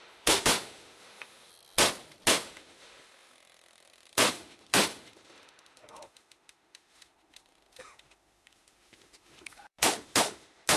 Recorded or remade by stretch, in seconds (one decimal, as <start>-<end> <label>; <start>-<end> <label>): 0.0-1.5 remade; 1.5-2.3 recorded; 2.3-10.8 remade